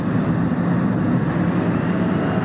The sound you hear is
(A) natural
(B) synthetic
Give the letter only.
A